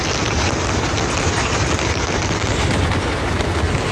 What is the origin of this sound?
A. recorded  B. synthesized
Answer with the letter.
A